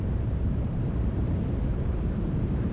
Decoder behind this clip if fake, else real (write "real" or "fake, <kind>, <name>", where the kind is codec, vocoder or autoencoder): fake, vocoder, BigVGAN v2